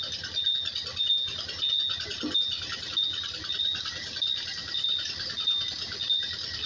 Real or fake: real